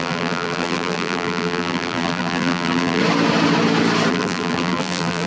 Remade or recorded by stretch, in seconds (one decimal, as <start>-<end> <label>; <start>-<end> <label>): 0.0-3.0 remade; 3.0-4.1 recorded; 4.1-5.3 remade